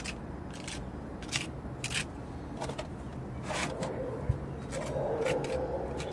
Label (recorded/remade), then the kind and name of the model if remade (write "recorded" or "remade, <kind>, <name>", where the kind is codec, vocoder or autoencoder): recorded